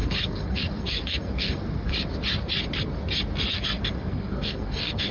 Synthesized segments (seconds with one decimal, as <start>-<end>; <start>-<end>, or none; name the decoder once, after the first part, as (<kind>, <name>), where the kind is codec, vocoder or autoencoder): 0.0-1.9 (codec, SNAC); 3.5-5.1